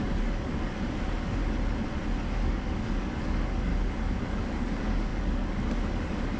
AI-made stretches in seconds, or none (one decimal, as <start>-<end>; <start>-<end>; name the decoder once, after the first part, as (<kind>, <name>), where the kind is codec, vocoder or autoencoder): 0.0-1.4 (codec, DAC); 2.3-3.7; 4.6-6.4